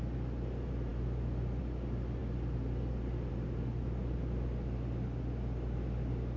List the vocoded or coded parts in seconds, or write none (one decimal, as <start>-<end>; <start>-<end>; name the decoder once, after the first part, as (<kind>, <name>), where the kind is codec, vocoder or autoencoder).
none